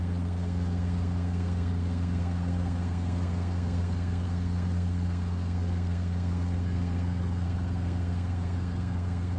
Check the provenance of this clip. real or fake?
fake